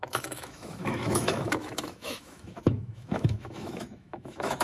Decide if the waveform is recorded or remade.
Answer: remade